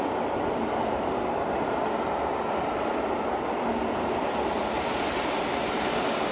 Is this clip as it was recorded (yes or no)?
yes